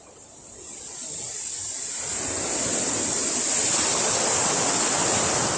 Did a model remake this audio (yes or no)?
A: yes